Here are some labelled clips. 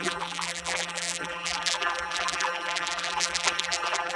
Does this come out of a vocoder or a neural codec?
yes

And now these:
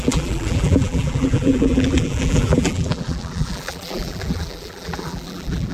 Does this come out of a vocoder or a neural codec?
yes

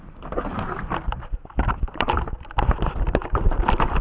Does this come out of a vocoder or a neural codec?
yes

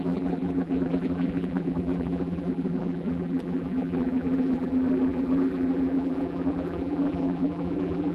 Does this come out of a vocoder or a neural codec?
yes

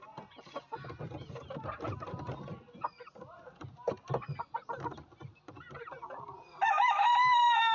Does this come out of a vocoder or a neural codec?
no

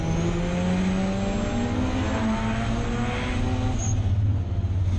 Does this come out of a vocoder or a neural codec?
no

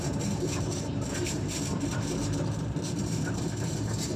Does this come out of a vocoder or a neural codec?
yes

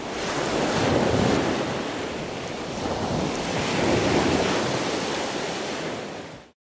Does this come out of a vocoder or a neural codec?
no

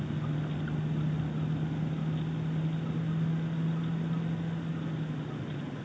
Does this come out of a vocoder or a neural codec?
no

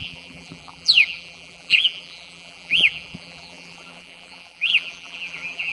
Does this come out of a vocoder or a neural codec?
yes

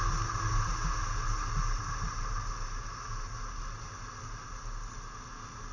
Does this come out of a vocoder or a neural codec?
no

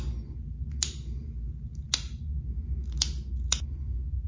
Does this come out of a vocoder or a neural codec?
no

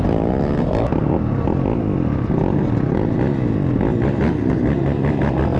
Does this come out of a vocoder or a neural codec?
no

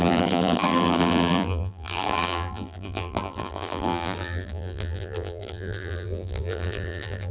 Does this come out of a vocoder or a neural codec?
yes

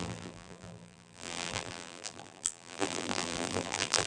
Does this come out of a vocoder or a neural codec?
yes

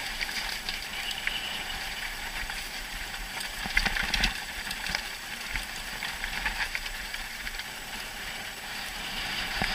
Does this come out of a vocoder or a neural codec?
yes